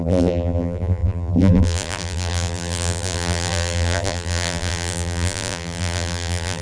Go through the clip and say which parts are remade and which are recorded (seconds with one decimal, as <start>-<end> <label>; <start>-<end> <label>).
0.0-6.6 remade